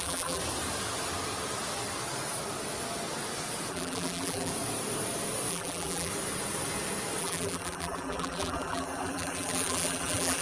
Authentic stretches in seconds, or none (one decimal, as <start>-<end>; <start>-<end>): 0.4-3.7; 4.5-5.5; 6.1-7.2